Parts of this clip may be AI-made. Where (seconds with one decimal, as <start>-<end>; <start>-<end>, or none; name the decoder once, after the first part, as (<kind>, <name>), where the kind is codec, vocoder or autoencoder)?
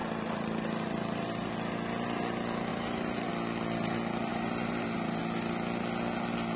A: 0.0-1.5 (vocoder, BigVGAN v2); 2.7-3.3; 4.3-5.2